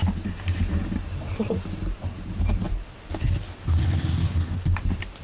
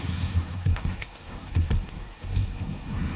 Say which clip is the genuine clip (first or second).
first